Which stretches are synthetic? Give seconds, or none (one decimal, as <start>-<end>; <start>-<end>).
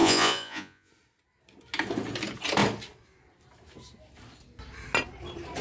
0.0-0.9